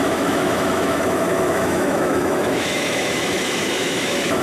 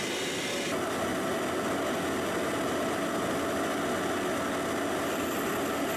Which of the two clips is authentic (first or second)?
second